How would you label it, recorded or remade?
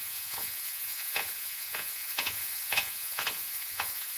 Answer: remade